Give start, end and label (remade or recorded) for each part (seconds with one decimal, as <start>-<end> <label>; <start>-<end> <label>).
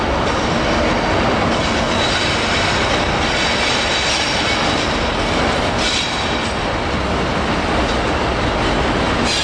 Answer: 0.0-9.4 recorded